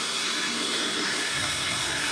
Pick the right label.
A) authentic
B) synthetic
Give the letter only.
B